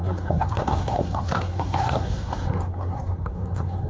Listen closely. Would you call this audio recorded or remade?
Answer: remade